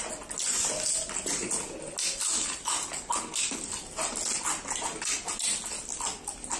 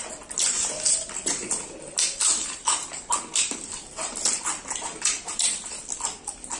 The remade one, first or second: second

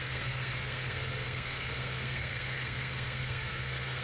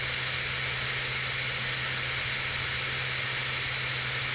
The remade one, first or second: first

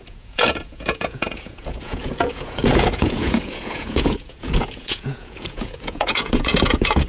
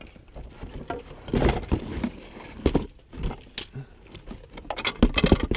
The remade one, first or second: first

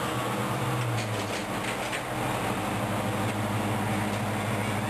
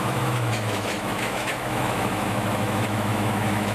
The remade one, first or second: second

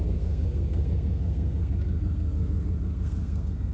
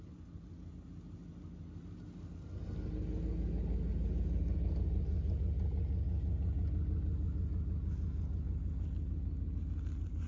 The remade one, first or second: first